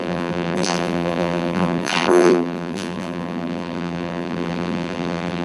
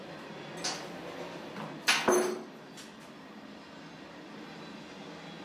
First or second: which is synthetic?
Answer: first